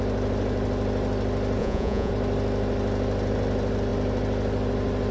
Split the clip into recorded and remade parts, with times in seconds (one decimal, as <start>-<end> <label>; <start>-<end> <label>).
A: 0.0-1.6 recorded; 1.6-2.1 remade; 2.1-5.1 recorded